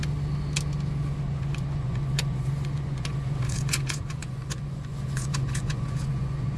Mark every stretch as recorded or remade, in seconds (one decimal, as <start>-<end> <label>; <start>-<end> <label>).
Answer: 0.0-1.2 recorded; 1.2-6.6 remade